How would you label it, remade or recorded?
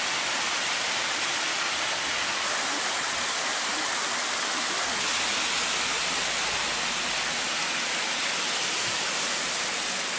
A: recorded